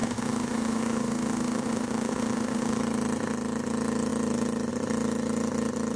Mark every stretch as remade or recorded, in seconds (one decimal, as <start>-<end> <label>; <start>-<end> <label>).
0.0-2.8 remade; 2.8-6.0 recorded